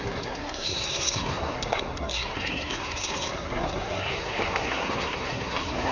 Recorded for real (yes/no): no